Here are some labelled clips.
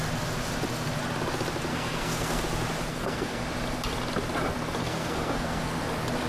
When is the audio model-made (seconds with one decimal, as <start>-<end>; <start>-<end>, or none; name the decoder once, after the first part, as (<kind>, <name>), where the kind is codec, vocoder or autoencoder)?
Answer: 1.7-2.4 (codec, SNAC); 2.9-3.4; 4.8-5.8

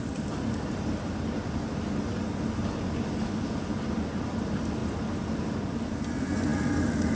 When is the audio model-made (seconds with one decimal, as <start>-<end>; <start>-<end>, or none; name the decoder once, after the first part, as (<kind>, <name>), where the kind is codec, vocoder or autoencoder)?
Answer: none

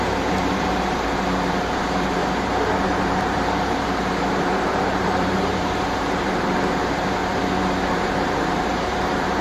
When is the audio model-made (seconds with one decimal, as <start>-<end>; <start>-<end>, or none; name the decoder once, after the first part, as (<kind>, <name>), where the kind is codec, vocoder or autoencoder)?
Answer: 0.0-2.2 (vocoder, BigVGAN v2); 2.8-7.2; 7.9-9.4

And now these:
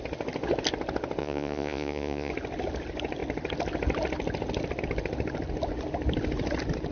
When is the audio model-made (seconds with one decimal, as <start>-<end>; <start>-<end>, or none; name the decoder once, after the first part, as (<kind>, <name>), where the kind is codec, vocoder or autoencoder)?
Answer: 1.2-2.3 (vocoder, Vocos)